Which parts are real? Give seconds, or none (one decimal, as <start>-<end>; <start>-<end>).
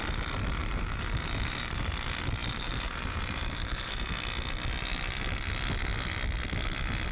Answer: 0.0-0.6; 1.9-2.4; 4.1-7.1